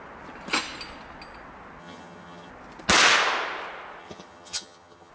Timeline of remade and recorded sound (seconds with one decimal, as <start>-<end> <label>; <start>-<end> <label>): 0.0-1.8 recorded; 1.8-2.5 remade; 2.5-4.0 recorded; 4.0-5.1 remade